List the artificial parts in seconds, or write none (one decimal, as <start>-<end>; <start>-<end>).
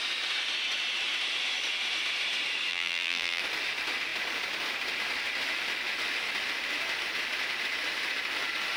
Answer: 2.7-3.4